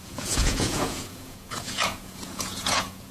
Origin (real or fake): fake